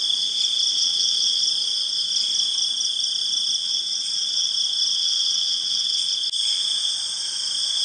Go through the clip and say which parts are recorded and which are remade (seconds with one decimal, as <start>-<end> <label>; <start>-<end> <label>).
0.0-0.7 recorded; 0.7-1.4 remade; 1.4-3.6 recorded; 3.6-4.5 remade; 4.5-4.9 recorded; 4.9-6.1 remade; 6.1-7.8 recorded